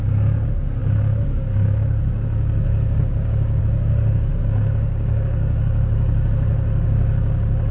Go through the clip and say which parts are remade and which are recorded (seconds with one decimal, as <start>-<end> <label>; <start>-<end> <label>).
0.0-7.7 remade

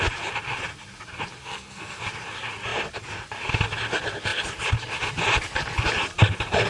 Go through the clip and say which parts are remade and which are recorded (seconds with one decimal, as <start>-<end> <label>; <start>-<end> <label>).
0.0-1.4 recorded; 1.4-2.0 remade; 2.0-6.7 recorded

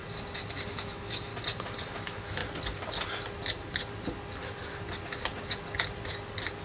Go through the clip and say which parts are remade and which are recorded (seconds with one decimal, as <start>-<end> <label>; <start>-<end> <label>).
0.0-0.7 recorded; 0.7-1.3 remade; 1.3-1.9 recorded; 1.9-2.4 remade; 2.4-6.6 recorded

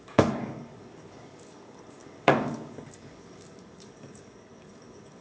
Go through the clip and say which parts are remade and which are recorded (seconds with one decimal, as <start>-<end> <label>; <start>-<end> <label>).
0.0-5.2 remade

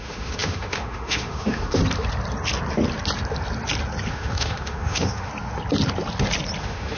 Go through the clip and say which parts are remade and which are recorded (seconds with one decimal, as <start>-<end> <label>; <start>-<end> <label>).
0.0-1.8 remade; 1.8-4.1 recorded; 4.1-5.3 remade; 5.3-6.6 recorded; 6.6-7.0 remade

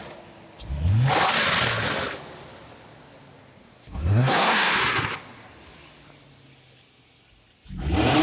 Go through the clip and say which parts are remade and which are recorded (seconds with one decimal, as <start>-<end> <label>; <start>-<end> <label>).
0.0-3.6 recorded; 3.6-4.7 remade; 4.7-8.2 recorded

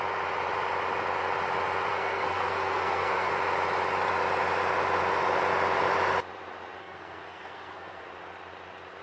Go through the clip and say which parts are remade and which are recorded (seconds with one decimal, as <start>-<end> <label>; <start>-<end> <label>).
0.0-1.9 recorded; 1.9-3.3 remade; 3.3-6.8 recorded; 6.8-8.0 remade; 8.0-9.0 recorded